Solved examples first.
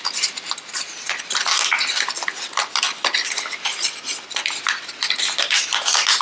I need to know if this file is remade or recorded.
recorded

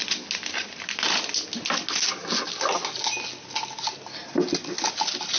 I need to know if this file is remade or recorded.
recorded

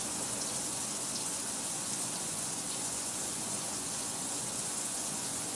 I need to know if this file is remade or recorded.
remade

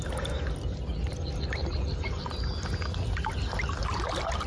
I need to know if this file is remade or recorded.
recorded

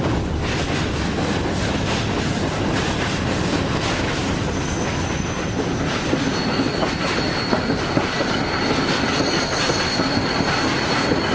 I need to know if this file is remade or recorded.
recorded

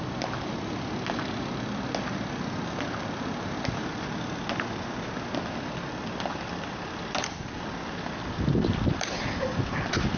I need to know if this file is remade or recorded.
recorded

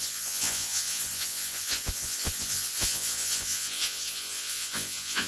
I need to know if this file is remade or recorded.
remade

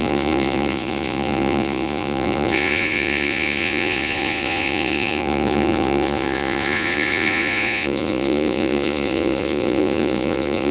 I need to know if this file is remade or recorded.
remade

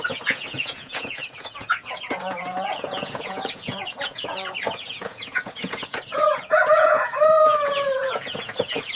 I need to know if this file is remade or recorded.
remade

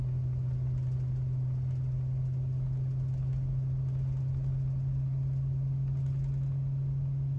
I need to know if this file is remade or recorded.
recorded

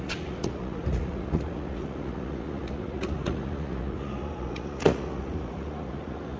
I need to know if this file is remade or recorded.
remade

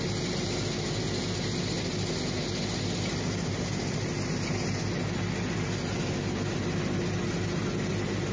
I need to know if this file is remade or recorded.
recorded